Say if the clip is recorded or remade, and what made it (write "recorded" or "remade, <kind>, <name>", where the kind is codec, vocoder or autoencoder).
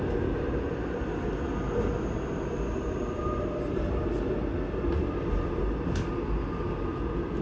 recorded